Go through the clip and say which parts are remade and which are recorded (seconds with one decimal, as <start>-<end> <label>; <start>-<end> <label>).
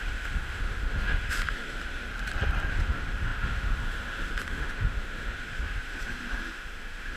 0.0-2.1 remade; 2.1-2.7 recorded; 2.7-7.2 remade